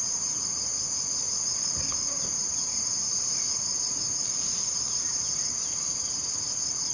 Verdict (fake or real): fake